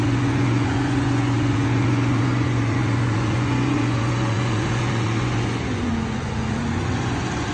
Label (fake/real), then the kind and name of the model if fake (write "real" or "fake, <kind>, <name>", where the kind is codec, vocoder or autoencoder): fake, vocoder, Vocos